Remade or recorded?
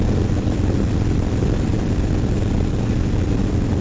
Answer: recorded